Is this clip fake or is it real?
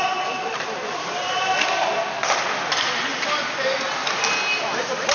real